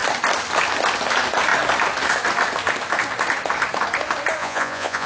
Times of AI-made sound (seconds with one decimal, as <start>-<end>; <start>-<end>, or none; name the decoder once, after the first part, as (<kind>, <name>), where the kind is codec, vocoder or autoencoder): 4.4-5.1 (vocoder, Vocos)